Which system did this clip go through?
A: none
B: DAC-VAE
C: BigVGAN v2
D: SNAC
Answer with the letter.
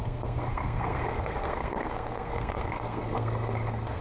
D